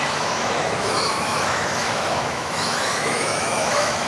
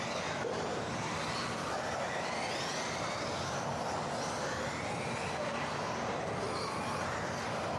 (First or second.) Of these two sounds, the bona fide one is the second